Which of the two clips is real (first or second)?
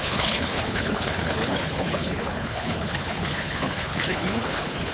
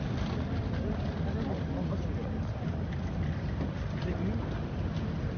second